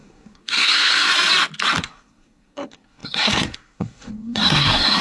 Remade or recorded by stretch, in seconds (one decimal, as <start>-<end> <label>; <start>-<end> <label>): 0.0-1.1 remade; 1.1-1.8 recorded; 1.8-5.0 remade